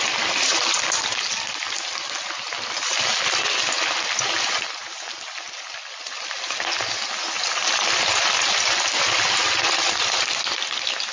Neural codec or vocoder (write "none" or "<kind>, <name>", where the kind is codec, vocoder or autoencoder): none